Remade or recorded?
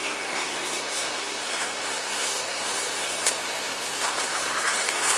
remade